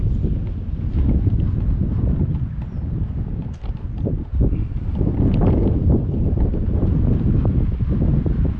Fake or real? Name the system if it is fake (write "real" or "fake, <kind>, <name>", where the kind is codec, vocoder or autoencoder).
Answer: real